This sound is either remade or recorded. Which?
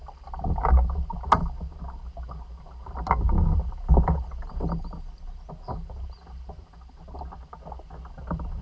recorded